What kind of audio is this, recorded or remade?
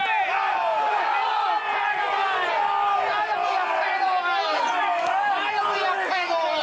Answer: recorded